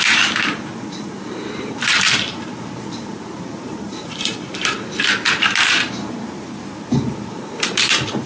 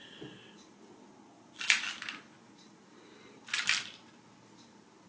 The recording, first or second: second